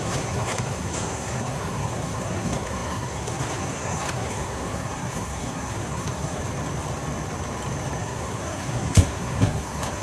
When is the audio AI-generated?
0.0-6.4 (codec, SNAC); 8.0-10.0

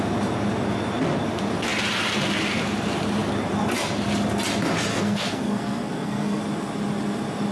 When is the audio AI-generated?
4.9-6.4 (codec, SNAC)

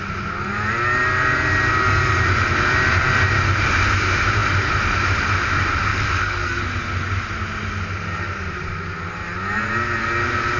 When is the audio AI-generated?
5.9-6.6 (codec, SNAC)